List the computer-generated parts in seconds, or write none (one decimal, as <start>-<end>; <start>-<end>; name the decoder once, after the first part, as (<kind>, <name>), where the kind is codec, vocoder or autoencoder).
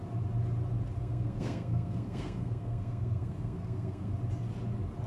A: 1.0-4.1 (codec, SNAC)